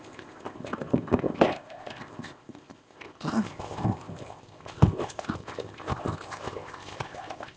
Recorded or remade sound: remade